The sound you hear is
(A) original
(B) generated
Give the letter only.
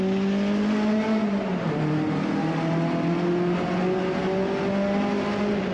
A